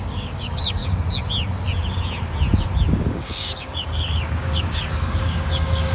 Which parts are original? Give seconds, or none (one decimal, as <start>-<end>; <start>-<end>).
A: 0.8-2.9